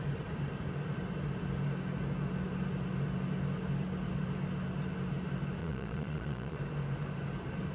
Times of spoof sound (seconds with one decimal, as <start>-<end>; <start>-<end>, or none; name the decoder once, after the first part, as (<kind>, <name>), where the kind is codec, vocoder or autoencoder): 5.6-6.6 (vocoder, Vocos)